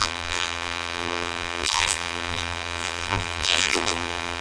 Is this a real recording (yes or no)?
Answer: no